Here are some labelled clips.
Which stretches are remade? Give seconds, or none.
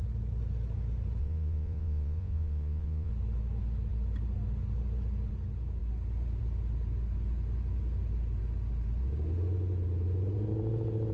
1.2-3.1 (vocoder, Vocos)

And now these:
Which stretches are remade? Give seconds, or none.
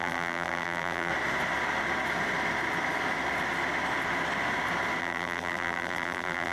0.0-1.1 (vocoder, BigVGAN v2); 5.0-6.5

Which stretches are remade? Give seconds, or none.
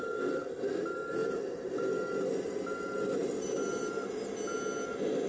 none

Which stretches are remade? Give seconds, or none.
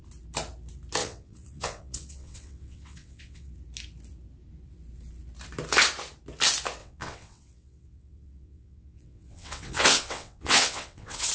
1.0-3.5 (vocoder, WaveNeXt); 6.8-11.3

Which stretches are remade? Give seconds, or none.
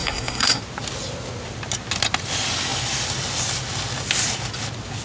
0.0-0.6 (codec, SNAC)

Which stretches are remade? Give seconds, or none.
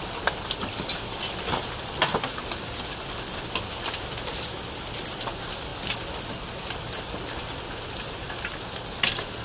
none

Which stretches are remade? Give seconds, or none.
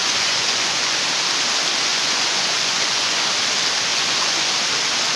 0.0-1.0 (vocoder, Vocos); 1.9-3.3; 3.9-4.5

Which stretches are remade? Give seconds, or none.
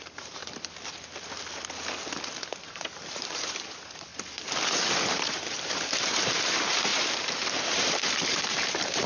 0.0-0.4 (vocoder, BigVGAN v2); 2.6-4.1; 5.3-9.1